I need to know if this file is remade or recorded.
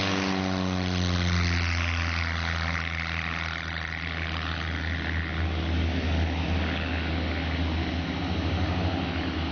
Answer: recorded